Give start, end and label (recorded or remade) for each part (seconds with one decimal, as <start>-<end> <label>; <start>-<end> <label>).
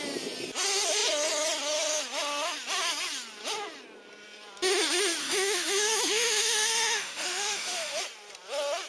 0.0-5.2 recorded; 5.2-8.0 remade; 8.0-8.9 recorded